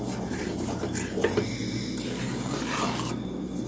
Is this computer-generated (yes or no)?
no